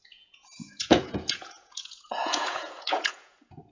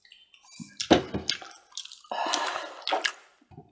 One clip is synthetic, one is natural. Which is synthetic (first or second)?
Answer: first